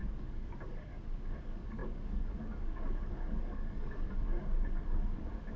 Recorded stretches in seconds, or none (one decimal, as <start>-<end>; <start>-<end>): 0.9-1.4